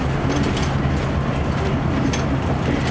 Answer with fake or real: real